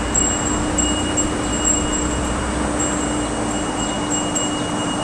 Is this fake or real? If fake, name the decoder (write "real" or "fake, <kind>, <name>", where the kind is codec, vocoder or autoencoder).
real